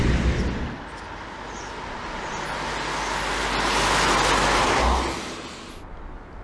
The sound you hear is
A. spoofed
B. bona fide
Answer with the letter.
B